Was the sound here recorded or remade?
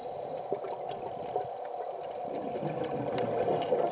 recorded